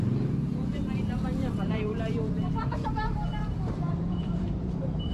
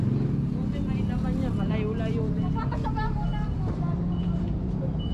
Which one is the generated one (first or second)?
first